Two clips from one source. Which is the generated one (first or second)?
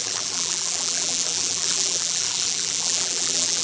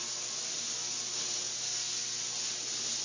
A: first